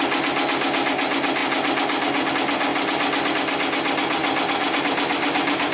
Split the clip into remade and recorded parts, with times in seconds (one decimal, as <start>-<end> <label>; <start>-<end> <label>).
0.0-5.7 recorded